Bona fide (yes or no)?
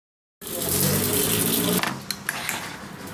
yes